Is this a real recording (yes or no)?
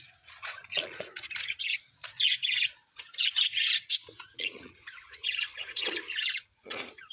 no